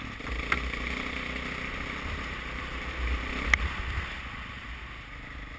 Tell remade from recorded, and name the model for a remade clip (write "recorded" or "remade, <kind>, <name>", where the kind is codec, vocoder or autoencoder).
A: recorded